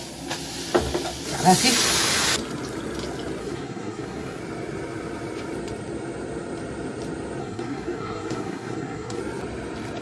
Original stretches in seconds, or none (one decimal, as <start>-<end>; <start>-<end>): 0.0-3.4; 4.4-7.4; 9.2-10.0